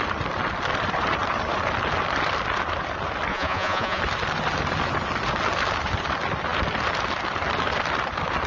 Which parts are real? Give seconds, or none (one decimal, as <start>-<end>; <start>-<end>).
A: 0.0-3.3; 4.0-8.5